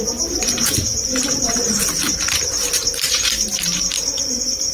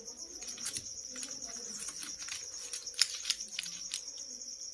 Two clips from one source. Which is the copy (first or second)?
first